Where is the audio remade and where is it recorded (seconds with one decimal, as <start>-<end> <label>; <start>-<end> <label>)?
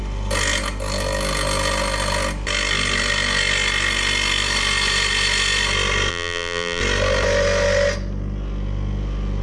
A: 0.0-6.1 recorded; 6.1-6.8 remade; 6.8-9.4 recorded